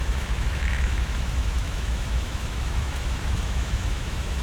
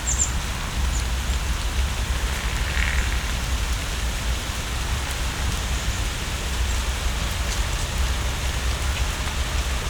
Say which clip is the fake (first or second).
first